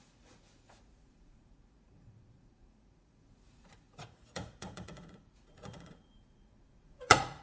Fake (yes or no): yes